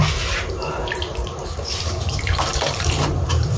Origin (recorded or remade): remade